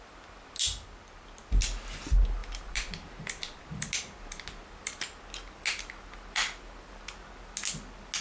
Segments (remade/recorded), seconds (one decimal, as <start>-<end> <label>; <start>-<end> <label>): 0.0-8.2 recorded